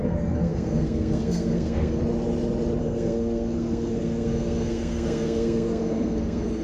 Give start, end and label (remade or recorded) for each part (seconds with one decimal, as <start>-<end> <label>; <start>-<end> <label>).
0.0-2.0 remade; 2.0-2.8 recorded; 2.8-6.6 remade